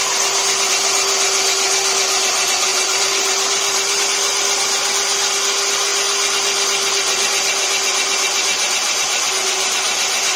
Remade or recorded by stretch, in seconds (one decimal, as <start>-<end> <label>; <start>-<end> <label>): 0.0-2.7 recorded; 2.7-4.0 remade; 4.0-10.4 recorded